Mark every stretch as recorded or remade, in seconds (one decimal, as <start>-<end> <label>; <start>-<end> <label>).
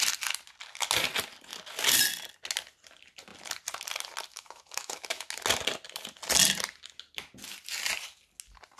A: 0.0-4.3 recorded; 4.3-5.3 remade; 5.3-8.8 recorded